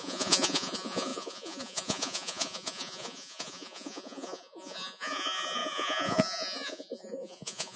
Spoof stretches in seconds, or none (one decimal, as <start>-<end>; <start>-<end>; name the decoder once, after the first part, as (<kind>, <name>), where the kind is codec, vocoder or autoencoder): 0.0-7.8 (vocoder, Vocos)